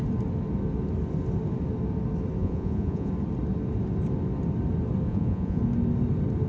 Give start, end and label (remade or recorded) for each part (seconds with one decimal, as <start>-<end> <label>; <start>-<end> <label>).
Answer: 0.0-2.4 recorded; 2.4-3.1 remade; 3.1-5.1 recorded; 5.1-5.6 remade; 5.6-6.5 recorded

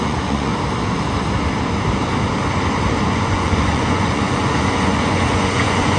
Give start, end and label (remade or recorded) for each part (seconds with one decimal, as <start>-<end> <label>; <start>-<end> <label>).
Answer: 0.0-0.5 remade; 0.5-3.0 recorded; 3.0-6.0 remade

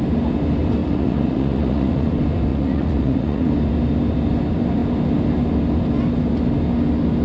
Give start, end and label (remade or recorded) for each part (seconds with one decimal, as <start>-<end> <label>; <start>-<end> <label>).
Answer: 0.0-0.8 recorded; 0.8-2.1 remade; 2.1-2.5 recorded; 2.5-3.5 remade; 3.5-7.2 recorded

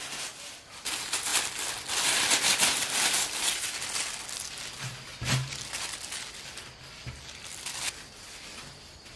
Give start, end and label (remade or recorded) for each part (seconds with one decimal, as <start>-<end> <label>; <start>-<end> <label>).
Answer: 0.0-9.2 recorded

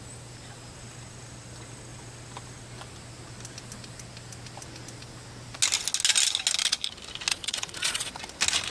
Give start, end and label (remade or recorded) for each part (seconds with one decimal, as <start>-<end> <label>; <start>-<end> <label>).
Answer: 0.0-7.3 recorded; 7.3-8.1 remade; 8.1-8.7 recorded

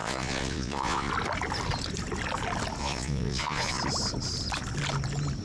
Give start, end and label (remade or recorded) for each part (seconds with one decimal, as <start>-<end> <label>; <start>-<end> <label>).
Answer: 0.0-1.1 remade; 1.1-2.8 recorded; 2.8-3.8 remade; 3.8-5.4 recorded